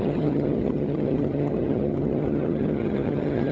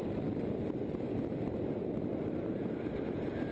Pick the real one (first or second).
second